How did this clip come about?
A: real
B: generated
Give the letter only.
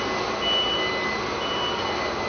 A